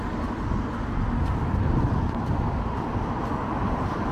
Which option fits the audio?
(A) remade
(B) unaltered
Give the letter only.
B